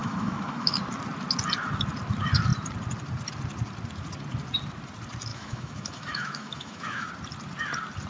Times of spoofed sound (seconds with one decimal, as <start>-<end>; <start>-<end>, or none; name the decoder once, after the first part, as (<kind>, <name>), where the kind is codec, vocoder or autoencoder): 0.0-0.8 (autoencoder, DAC-VAE); 5.3-7.1